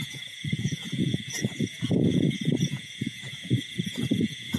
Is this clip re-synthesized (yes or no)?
yes